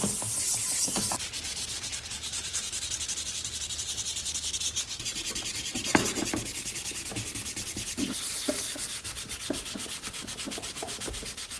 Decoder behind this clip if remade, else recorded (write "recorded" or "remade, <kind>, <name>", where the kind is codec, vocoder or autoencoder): recorded